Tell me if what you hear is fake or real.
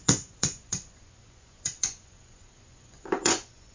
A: fake